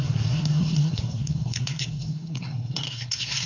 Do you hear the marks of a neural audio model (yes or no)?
yes